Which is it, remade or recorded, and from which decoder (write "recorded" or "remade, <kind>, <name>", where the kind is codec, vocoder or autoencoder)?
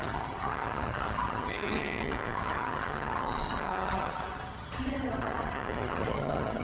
remade, vocoder, HiFi-GAN